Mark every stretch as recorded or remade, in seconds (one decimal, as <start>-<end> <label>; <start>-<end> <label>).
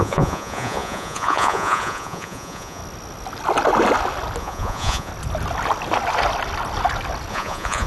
0.0-2.8 remade; 2.8-4.4 recorded; 4.4-5.1 remade; 5.1-7.3 recorded; 7.3-7.9 remade